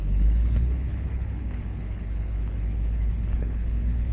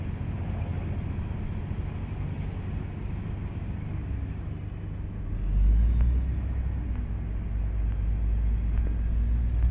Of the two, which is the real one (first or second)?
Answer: second